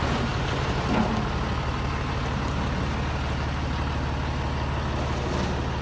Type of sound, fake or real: real